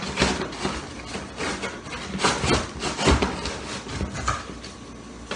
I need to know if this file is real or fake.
real